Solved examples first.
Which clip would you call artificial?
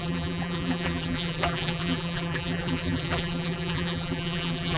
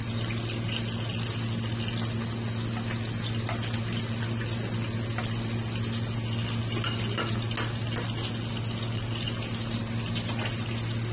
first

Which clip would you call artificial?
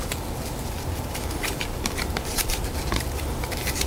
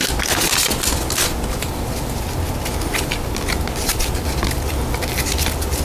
first